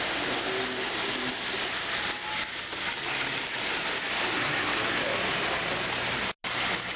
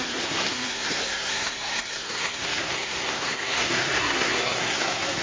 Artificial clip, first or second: second